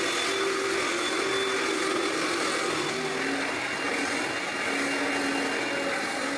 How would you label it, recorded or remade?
recorded